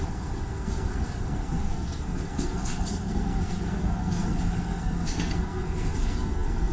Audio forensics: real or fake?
fake